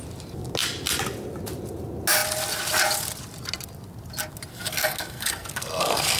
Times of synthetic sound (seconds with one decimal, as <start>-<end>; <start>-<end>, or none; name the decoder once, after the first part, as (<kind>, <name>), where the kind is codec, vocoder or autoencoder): 4.5-6.2 (codec, SNAC)